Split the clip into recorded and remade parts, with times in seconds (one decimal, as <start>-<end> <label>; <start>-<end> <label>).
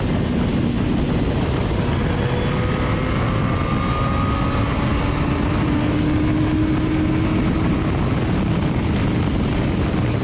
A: 0.0-10.2 recorded